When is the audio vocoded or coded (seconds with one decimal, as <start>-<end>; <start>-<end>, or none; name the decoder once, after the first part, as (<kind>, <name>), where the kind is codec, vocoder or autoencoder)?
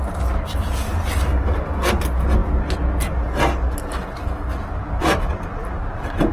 1.3-1.9 (codec, DAC)